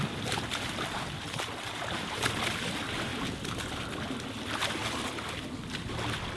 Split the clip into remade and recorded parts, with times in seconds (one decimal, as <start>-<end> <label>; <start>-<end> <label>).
0.0-3.1 remade; 3.1-6.4 recorded